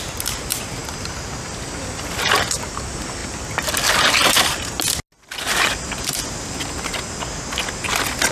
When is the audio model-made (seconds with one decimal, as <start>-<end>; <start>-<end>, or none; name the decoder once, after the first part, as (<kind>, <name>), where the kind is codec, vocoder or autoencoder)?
none